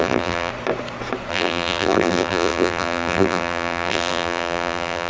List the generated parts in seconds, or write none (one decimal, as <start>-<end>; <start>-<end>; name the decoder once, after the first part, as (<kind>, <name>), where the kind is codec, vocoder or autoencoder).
0.0-0.5 (vocoder, BigVGAN v2); 1.3-5.1